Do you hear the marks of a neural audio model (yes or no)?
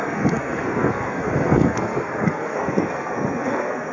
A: yes